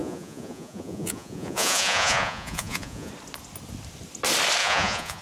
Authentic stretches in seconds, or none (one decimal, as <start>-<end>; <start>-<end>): 3.1-4.6